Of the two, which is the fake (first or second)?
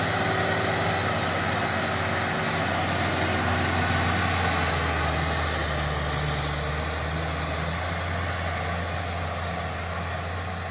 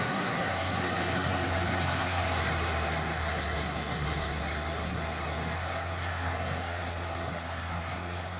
second